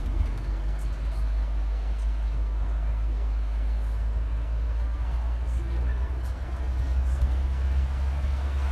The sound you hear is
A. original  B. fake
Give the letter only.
B